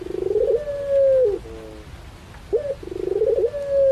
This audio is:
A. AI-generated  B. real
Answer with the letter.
B